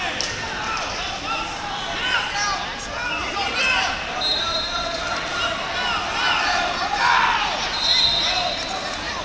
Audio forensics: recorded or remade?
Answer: recorded